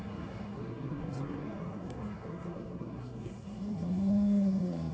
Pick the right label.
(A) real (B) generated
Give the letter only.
B